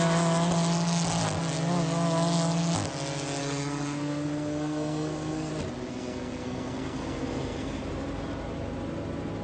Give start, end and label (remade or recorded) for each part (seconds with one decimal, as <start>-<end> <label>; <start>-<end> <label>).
0.0-3.4 recorded; 3.4-5.5 remade; 5.5-5.9 recorded; 5.9-7.8 remade; 7.8-9.4 recorded